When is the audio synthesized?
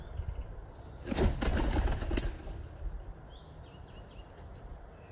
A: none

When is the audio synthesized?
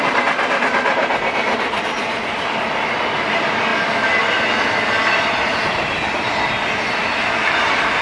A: none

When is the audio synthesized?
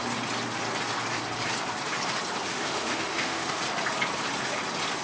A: 2.5-3.6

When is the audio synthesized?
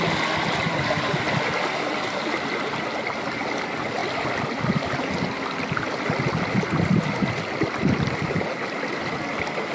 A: none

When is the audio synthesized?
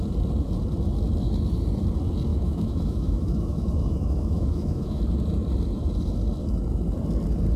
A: 2.3-5.0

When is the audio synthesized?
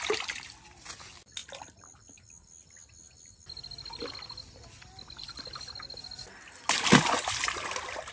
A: none